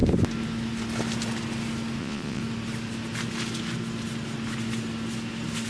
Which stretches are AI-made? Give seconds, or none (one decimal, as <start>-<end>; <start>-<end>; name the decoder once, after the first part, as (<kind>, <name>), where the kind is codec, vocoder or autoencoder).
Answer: 2.0-2.4 (vocoder, Vocos)